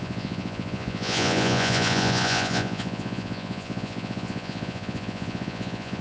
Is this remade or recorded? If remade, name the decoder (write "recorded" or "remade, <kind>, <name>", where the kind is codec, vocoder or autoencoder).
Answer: remade, vocoder, Vocos